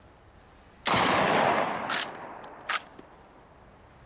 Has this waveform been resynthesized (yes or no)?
no